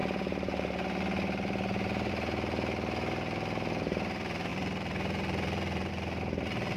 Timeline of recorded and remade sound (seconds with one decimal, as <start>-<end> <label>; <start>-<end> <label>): 0.0-4.5 recorded; 4.5-5.9 remade; 5.9-6.8 recorded